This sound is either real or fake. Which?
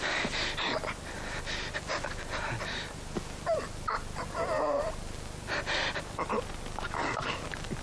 real